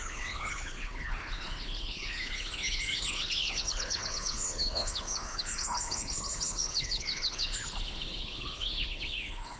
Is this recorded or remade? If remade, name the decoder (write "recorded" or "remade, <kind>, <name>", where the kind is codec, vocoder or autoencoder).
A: remade, codec, HILCodec